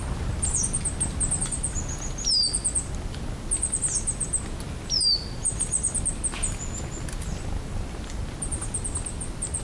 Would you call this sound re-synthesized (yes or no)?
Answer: no